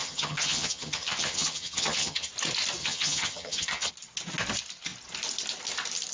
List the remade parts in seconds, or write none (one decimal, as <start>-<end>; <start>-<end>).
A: 0.0-2.3; 2.8-3.9